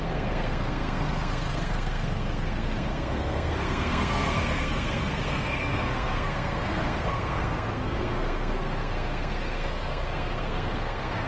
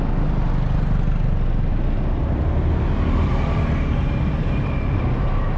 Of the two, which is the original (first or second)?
second